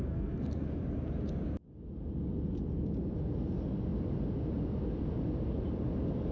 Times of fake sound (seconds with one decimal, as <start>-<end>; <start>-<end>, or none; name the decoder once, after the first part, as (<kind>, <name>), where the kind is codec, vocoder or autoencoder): 0.0-0.8 (codec, SNAC)